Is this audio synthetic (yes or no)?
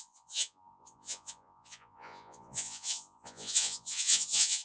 yes